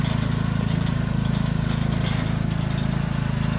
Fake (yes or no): no